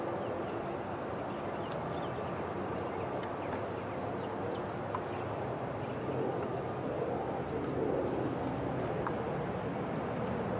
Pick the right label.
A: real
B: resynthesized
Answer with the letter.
A